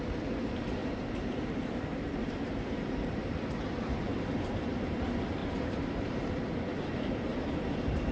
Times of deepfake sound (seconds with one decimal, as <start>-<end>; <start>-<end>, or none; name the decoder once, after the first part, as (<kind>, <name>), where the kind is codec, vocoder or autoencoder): 0.8-5.0 (vocoder, BigVGAN v2); 5.4-6.5; 7.3-8.1